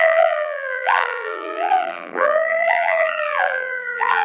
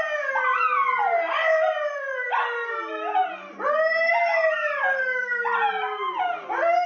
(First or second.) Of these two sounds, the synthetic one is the first